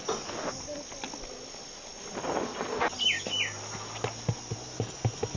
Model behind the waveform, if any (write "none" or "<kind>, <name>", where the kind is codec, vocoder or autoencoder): none